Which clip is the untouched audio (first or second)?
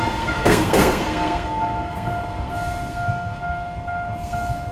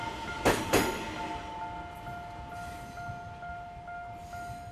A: second